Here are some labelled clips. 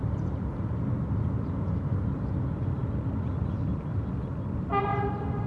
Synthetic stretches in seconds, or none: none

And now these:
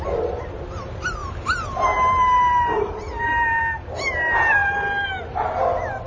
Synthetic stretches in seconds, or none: 1.2-3.6 (vocoder, BigVGAN v2)

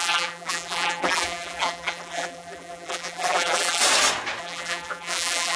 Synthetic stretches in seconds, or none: 0.0-3.8 (vocoder, BigVGAN v2); 4.4-5.6

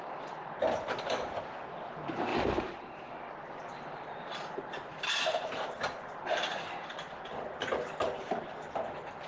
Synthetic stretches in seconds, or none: 2.3-6.6 (vocoder, BigVGAN v2)

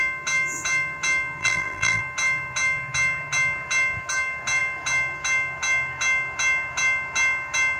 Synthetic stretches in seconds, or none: 1.4-2.0 (vocoder, BigVGAN v2)

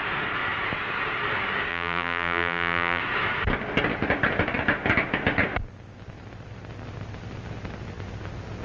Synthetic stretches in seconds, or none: 1.7-3.0 (vocoder, BigVGAN v2)

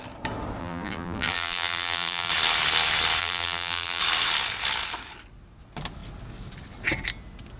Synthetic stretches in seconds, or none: 0.6-2.3 (vocoder, BigVGAN v2); 3.2-4.0

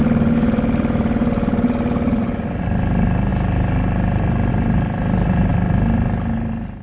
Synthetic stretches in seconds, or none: 0.0-1.5 (vocoder, BigVGAN v2)